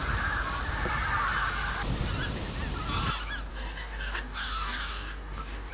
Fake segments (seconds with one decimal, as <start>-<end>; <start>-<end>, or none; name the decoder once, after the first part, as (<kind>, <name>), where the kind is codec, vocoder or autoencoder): 3.5-5.7 (codec, DAC)